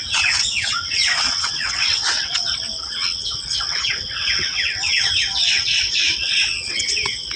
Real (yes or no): no